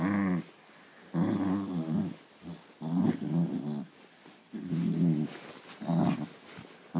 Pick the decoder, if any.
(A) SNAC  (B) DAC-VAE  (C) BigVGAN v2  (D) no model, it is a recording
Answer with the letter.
D